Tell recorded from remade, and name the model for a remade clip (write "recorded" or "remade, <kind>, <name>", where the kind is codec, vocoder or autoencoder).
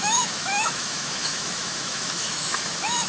remade, autoencoder, DAC-VAE